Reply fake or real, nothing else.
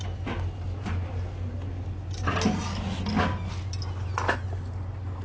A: real